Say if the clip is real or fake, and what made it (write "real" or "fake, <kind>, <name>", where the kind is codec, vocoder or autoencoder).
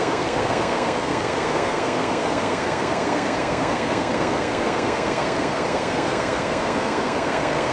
fake, codec, SNAC